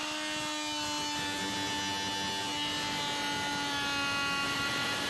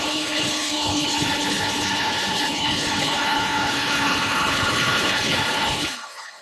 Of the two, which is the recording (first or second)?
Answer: first